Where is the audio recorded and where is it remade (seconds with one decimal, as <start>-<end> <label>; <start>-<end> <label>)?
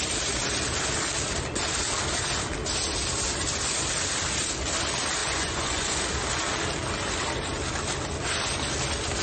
0.0-5.2 recorded; 5.2-6.0 remade; 6.0-9.2 recorded